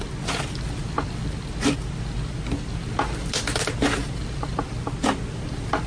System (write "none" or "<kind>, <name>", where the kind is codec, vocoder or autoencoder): none